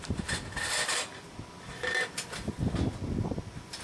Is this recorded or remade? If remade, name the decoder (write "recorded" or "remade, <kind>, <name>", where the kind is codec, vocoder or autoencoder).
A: recorded